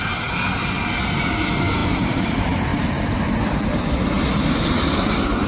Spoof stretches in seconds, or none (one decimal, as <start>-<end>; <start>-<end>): 1.8-2.3